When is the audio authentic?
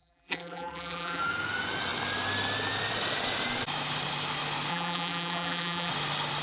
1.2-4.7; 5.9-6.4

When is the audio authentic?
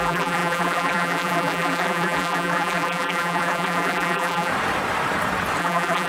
4.5-5.6